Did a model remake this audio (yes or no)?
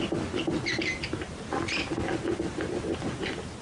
no